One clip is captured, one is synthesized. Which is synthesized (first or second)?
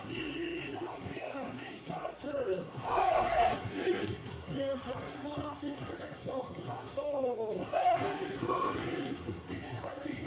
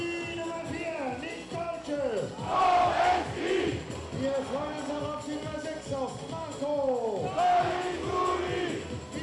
first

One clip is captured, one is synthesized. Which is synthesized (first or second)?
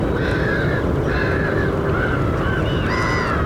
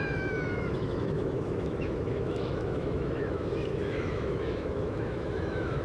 second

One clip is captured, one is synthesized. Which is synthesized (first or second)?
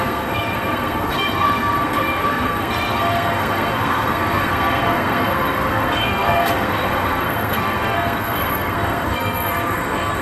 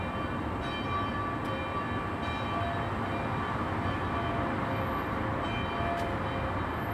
first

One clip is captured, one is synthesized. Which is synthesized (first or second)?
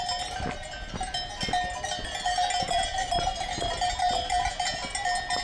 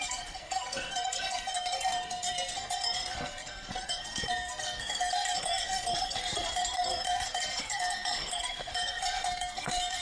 second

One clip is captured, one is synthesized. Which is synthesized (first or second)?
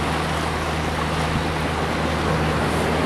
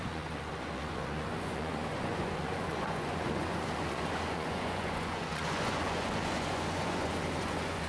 second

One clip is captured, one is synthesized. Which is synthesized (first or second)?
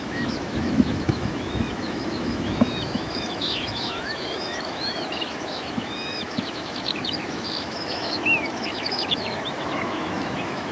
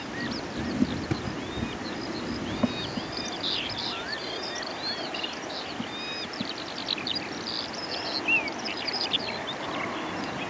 first